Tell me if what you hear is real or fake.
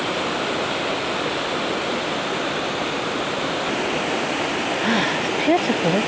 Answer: real